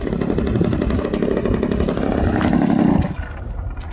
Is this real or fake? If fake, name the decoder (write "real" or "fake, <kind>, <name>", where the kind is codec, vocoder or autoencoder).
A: real